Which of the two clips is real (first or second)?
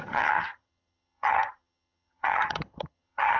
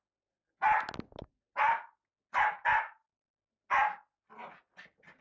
second